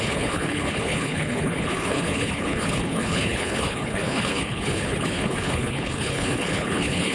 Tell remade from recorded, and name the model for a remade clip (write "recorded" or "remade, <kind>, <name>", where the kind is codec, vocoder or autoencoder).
remade, codec, HILCodec